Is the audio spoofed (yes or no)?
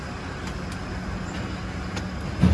no